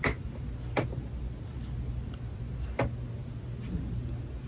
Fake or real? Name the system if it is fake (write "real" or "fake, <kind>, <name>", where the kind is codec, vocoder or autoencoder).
real